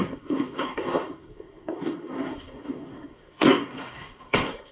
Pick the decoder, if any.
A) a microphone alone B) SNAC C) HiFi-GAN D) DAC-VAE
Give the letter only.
B